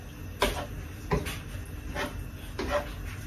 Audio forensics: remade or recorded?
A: recorded